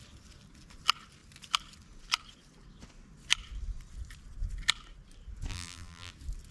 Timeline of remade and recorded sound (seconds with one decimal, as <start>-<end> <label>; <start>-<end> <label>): 0.0-5.5 recorded; 5.5-6.1 remade; 6.1-6.5 recorded